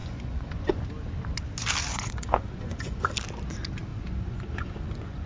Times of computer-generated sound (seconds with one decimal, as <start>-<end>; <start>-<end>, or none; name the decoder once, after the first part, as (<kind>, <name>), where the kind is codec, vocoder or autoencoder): 0.0-0.8 (vocoder, Vocos); 1.9-3.1; 3.9-5.3